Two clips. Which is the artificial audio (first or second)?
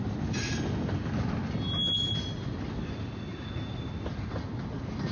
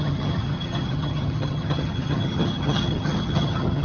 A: second